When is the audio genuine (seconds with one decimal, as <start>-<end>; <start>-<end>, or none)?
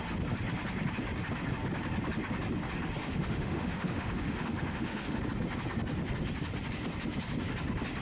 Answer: 0.0-3.0; 5.2-8.0